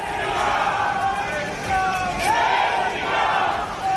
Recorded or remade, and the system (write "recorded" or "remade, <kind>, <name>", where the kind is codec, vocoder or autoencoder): remade, vocoder, BigVGAN v2